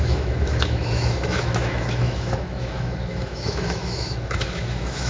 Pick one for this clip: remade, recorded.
remade